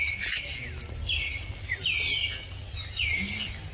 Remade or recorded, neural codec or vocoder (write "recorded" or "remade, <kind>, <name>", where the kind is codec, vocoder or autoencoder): recorded